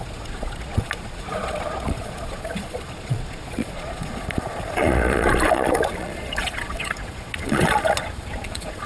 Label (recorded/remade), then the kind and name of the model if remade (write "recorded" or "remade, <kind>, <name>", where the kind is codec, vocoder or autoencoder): remade, vocoder, Vocos